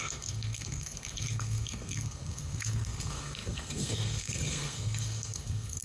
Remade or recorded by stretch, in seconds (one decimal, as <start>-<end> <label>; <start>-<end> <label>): 0.0-5.8 remade